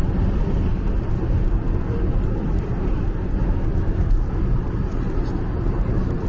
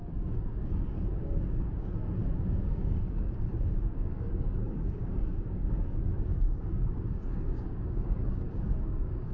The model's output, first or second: second